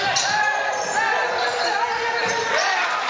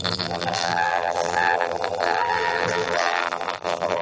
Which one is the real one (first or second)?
first